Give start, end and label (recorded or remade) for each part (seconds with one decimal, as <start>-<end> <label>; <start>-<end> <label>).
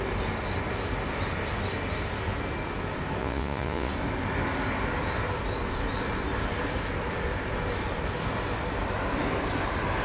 0.0-3.2 recorded; 3.2-3.9 remade; 3.9-10.0 recorded